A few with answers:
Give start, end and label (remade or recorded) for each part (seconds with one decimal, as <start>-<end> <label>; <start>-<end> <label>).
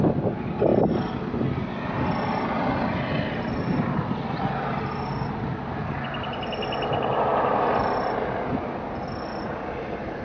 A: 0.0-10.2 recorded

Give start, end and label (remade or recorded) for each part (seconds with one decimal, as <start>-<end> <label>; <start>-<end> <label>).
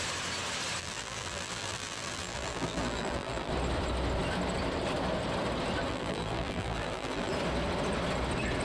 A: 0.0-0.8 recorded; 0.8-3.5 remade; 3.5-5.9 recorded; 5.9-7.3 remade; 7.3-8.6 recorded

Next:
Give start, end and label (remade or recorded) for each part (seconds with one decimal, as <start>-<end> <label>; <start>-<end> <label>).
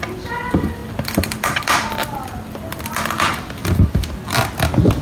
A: 0.0-3.6 remade; 3.6-5.0 recorded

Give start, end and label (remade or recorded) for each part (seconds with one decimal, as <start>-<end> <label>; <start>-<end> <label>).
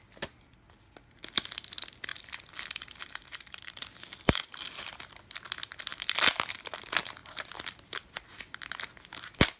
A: 0.0-2.1 recorded; 2.1-5.0 remade; 5.0-5.9 recorded; 5.9-6.5 remade; 6.5-7.2 recorded; 7.2-8.4 remade; 8.4-9.6 recorded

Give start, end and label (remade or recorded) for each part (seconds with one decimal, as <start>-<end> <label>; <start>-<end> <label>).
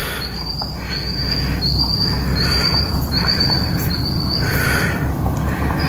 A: 0.0-0.9 remade; 0.9-2.3 recorded; 2.3-3.9 remade; 3.9-5.9 recorded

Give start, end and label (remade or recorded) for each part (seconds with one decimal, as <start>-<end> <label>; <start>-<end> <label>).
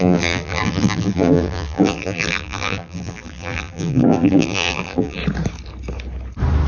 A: 0.0-5.2 remade; 5.2-6.7 recorded